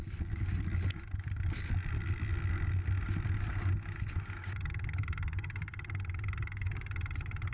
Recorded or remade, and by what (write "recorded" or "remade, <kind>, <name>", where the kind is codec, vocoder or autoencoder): recorded